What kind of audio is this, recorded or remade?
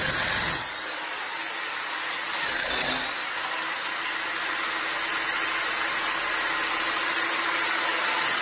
recorded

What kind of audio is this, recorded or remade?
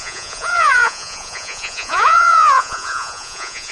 remade